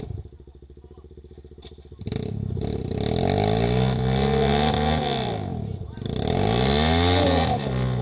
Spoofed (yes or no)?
no